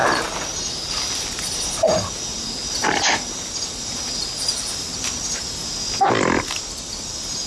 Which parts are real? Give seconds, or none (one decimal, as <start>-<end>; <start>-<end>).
0.0-7.5

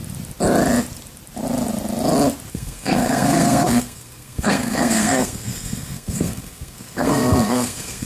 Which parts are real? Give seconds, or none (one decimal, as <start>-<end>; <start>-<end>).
0.0-2.5

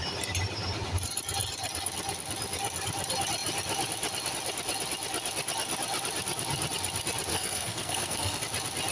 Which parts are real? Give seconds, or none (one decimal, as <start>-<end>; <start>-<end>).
0.0-7.3; 8.4-8.9

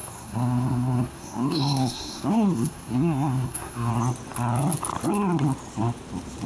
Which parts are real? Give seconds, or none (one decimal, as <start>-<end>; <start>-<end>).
3.9-6.5

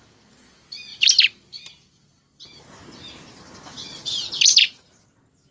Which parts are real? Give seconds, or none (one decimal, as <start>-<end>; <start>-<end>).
0.0-5.5

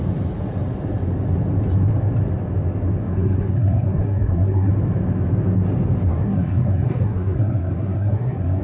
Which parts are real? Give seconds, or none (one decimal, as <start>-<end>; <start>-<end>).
0.0-3.0; 4.7-6.1